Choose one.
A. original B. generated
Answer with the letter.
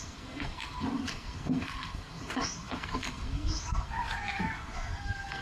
B